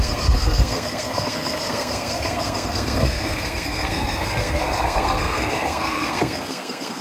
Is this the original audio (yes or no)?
no